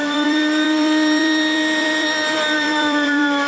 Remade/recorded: remade